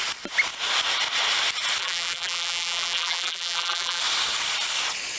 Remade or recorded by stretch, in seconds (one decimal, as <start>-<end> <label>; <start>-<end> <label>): 0.0-1.8 recorded; 1.8-4.0 remade; 4.0-5.2 recorded